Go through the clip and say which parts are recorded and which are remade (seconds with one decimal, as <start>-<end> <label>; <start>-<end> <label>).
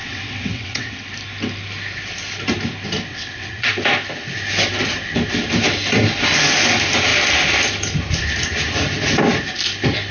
0.0-1.1 remade; 1.1-3.1 recorded; 3.1-3.7 remade; 3.7-10.1 recorded